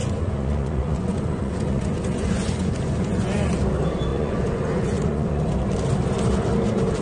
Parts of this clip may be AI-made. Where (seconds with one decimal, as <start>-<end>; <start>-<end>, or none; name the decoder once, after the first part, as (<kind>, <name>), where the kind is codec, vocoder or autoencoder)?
0.0-3.5 (vocoder, Vocos); 4.1-5.4